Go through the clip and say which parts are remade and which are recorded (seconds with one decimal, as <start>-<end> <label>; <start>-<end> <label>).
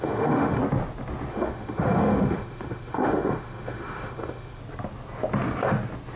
0.0-0.6 remade; 0.6-1.3 recorded; 1.3-4.6 remade; 4.6-6.2 recorded